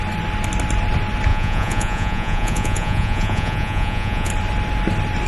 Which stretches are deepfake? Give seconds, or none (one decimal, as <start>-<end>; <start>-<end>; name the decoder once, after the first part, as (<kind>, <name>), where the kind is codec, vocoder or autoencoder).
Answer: 1.3-4.3 (vocoder, Vocos)